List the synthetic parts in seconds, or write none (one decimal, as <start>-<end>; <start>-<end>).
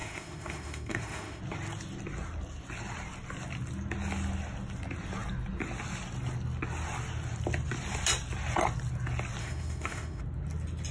0.0-1.4; 9.4-10.2